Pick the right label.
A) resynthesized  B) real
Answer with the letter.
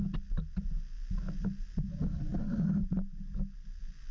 B